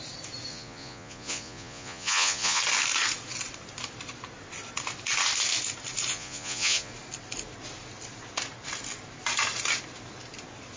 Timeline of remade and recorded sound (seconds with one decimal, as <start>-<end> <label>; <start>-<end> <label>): 0.0-0.5 recorded; 0.5-2.6 remade; 2.6-6.1 recorded; 6.1-6.9 remade; 6.9-10.8 recorded